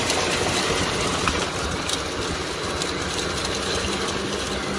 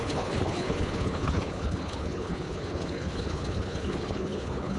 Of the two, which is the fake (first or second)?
second